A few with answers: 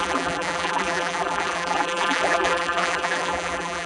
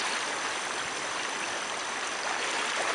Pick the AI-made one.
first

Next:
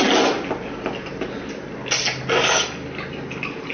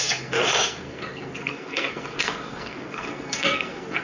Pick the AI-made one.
second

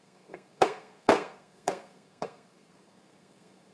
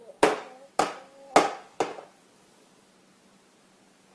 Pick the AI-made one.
first